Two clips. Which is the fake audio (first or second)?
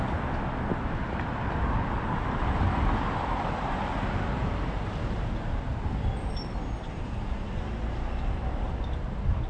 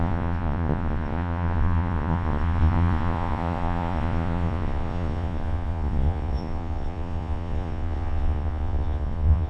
second